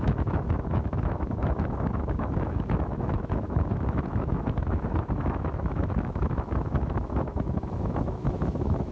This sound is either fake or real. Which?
fake